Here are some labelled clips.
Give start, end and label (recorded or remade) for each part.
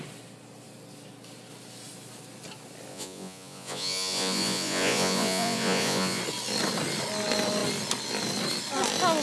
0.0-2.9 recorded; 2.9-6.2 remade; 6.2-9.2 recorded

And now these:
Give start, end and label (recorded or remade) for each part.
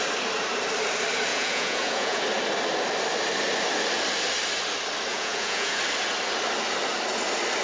0.0-1.3 recorded; 1.3-2.2 remade; 2.2-5.1 recorded; 5.1-5.8 remade; 5.8-7.6 recorded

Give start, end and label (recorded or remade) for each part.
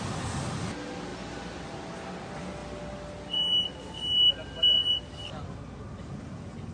0.0-6.7 recorded